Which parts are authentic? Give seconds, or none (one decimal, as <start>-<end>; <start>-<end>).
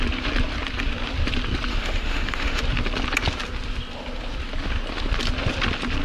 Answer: 0.0-1.7; 2.6-6.0